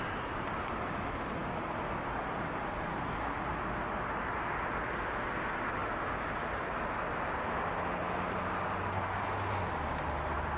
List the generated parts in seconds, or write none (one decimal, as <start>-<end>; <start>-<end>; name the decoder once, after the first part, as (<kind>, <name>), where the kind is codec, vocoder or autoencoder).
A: none